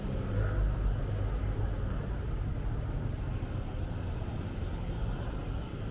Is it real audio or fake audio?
real